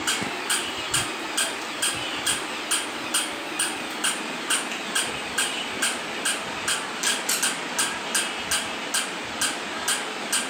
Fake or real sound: real